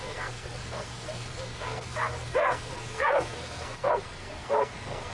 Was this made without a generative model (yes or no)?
no